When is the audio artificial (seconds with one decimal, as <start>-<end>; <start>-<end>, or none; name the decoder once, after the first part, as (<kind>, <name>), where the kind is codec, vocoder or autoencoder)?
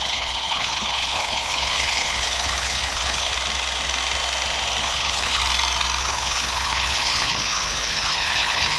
0.0-3.3 (codec, HILCodec); 4.8-5.4; 6.0-8.8